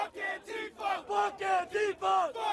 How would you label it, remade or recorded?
recorded